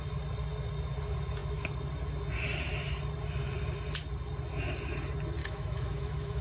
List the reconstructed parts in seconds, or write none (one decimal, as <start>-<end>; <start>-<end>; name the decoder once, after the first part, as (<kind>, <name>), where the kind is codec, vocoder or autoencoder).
5.4-6.4 (autoencoder, DAC-VAE)